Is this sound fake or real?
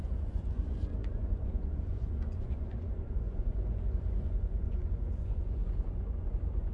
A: fake